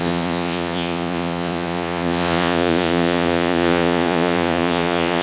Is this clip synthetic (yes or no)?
yes